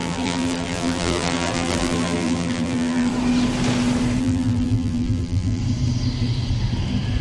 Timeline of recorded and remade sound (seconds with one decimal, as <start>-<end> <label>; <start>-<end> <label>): 0.0-3.1 remade; 3.1-4.2 recorded; 4.2-5.6 remade; 5.6-7.2 recorded

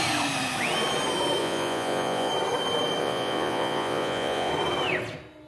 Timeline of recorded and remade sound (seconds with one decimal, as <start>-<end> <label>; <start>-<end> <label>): 0.0-1.4 recorded; 1.4-2.3 remade; 2.3-3.0 recorded; 3.0-4.5 remade; 4.5-5.5 recorded

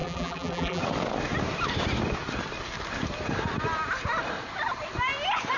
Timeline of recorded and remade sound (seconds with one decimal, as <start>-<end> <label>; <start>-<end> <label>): 0.0-0.8 remade; 0.8-5.6 recorded

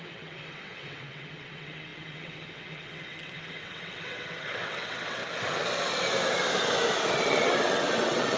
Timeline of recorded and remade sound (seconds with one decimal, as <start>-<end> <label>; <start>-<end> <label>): 0.0-5.2 remade; 5.2-7.1 recorded; 7.1-8.4 remade

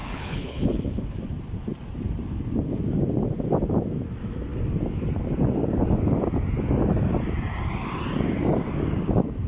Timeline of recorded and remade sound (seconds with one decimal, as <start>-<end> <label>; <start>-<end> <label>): 0.0-1.2 remade; 1.2-9.5 recorded

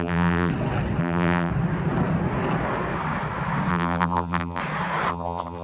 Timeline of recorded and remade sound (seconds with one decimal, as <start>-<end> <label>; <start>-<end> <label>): 0.0-0.5 remade; 0.5-1.0 recorded; 1.0-1.5 remade; 1.5-3.7 recorded; 3.7-4.6 remade; 4.6-5.1 recorded; 5.1-5.6 remade

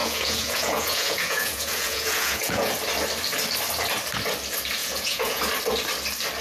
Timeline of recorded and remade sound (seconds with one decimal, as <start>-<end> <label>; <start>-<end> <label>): 0.0-2.7 remade; 2.7-4.8 recorded; 4.8-5.4 remade; 5.4-6.4 recorded

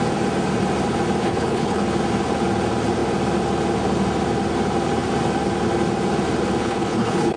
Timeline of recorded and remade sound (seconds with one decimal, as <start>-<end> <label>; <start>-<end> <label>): 0.0-1.2 recorded; 1.2-1.8 remade; 1.8-6.6 recorded; 6.6-7.4 remade